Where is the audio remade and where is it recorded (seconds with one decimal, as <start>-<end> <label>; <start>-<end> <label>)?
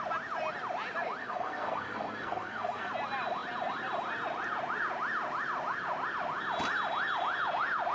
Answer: 0.0-1.2 recorded; 1.2-2.9 remade; 2.9-7.9 recorded